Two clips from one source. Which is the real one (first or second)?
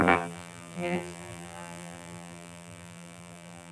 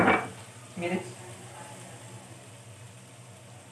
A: second